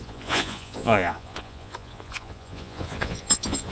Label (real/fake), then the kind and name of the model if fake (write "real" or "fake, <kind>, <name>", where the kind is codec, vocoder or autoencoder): fake, vocoder, Vocos